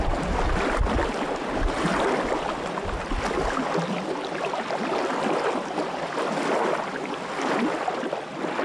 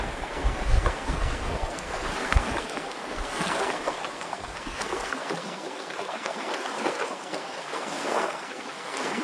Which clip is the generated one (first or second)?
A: second